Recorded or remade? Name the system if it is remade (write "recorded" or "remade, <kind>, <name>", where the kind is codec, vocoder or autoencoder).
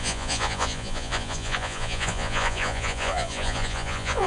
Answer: remade, vocoder, Vocos